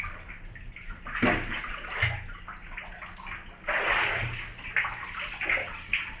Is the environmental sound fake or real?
real